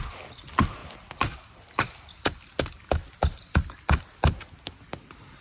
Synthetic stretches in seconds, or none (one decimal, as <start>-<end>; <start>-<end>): none